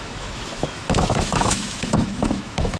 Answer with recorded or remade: remade